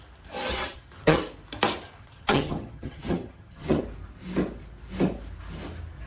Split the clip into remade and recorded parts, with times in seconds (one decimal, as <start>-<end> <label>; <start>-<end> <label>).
0.0-0.5 recorded; 0.5-1.2 remade; 1.2-2.0 recorded; 2.0-3.8 remade; 3.8-6.1 recorded